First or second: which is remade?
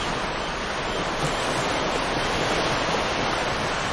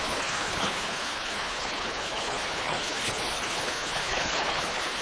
second